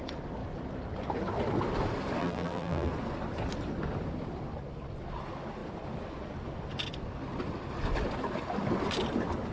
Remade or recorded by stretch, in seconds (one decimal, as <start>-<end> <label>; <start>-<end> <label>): 0.0-2.2 recorded; 2.2-2.9 remade; 2.9-9.5 recorded